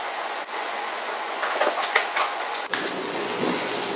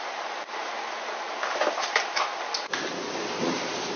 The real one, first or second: second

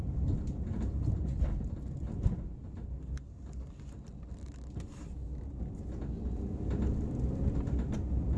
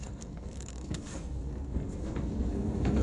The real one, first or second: first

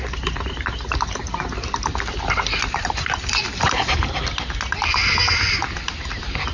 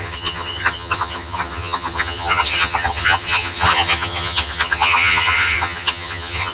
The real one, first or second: first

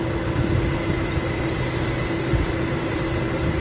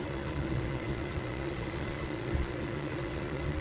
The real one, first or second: first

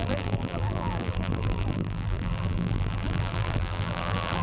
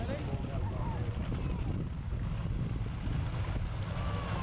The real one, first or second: second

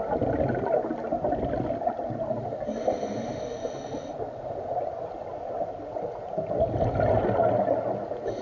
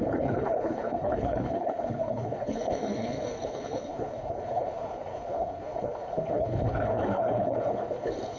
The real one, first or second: first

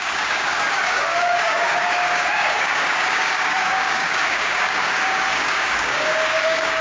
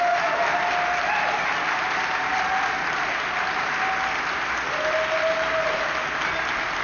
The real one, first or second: second